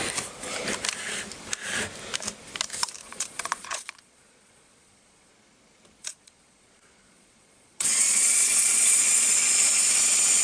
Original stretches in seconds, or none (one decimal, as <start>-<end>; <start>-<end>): 0.0-3.0; 5.3-6.0; 9.8-10.4